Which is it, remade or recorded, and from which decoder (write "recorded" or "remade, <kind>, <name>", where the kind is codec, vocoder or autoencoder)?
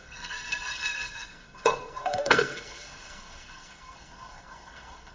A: remade, codec, SNAC